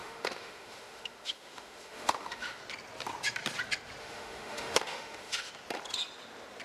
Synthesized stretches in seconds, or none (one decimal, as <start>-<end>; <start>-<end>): 0.0-2.6; 4.0-5.5